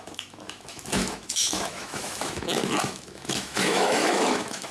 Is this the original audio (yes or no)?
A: no